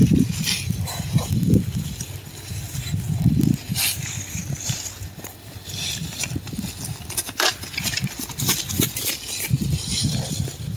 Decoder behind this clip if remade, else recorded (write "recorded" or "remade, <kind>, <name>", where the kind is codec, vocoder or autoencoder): remade, vocoder, BigVGAN v2